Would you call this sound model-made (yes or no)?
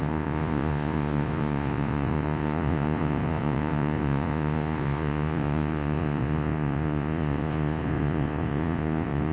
yes